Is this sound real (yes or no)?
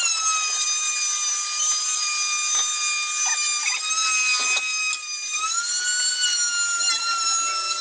yes